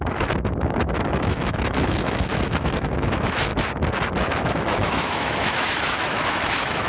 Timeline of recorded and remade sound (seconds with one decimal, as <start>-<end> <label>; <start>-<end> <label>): 0.0-3.5 remade; 3.5-4.3 recorded; 4.3-6.9 remade